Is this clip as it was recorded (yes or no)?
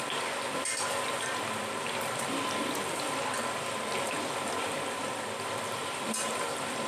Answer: no